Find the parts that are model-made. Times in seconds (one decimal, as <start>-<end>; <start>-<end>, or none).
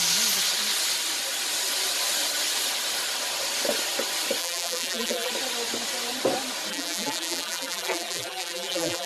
4.4-5.3; 6.7-9.1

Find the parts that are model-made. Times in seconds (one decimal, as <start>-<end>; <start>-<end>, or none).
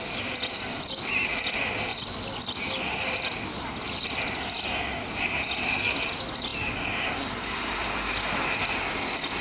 none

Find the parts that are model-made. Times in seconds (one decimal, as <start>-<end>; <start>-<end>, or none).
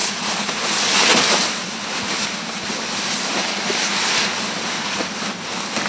none